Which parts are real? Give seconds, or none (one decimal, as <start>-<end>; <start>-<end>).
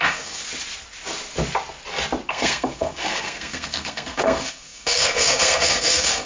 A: 0.4-2.3